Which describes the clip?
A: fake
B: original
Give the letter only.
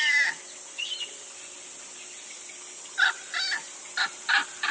B